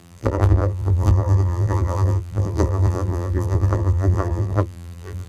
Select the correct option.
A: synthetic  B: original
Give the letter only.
A